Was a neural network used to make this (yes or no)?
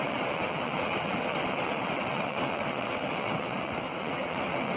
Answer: yes